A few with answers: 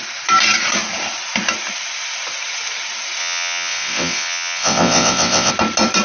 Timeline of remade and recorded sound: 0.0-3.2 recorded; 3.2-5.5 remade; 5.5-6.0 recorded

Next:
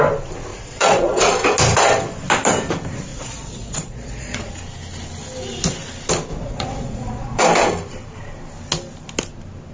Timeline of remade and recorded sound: 0.0-0.5 recorded; 0.5-1.3 remade; 1.3-3.1 recorded; 3.1-4.5 remade; 4.5-6.3 recorded; 6.3-7.4 remade; 7.4-9.7 recorded

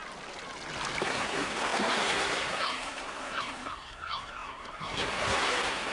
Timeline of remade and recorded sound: 0.0-1.0 recorded; 1.0-5.9 remade

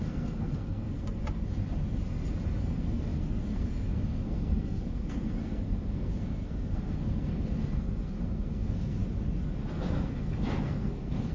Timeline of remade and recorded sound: 0.0-1.2 remade; 1.2-2.6 recorded; 2.6-9.0 remade; 9.0-9.7 recorded; 9.7-11.3 remade

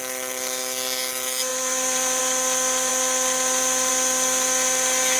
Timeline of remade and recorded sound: 0.0-1.5 recorded; 1.5-2.2 remade; 2.2-5.2 recorded

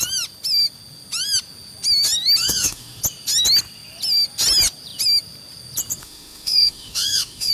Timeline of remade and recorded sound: 0.0-2.4 recorded; 2.4-3.0 remade; 3.0-6.0 recorded; 6.0-7.5 remade

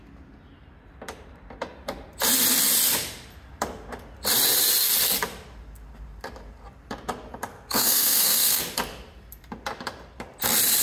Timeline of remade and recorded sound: 0.0-7.5 recorded; 7.5-8.6 remade; 8.6-10.8 recorded